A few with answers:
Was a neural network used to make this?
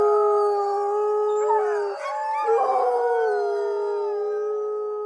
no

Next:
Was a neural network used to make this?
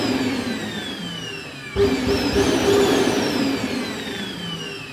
no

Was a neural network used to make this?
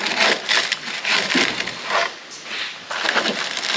no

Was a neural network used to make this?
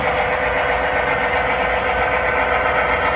no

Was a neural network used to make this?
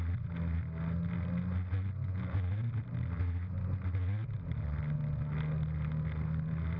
no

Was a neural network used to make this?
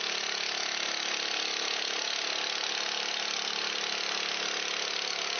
no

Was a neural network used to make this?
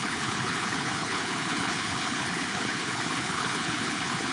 yes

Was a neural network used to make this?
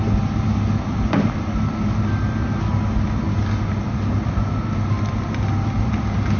no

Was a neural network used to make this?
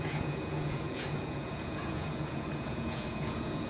yes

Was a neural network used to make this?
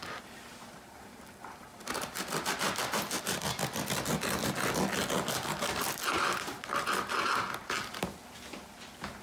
no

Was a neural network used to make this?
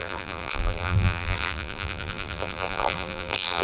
yes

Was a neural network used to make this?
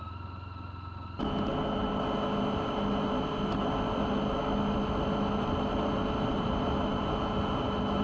no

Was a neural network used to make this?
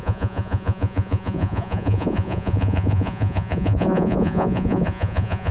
yes